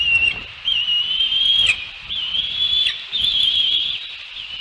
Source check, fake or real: real